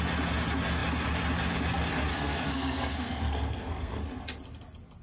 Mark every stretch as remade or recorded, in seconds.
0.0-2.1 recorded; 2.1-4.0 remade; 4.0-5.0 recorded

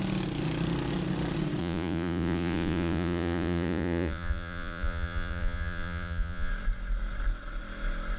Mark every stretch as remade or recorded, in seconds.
0.0-1.6 recorded; 1.6-6.5 remade; 6.5-8.2 recorded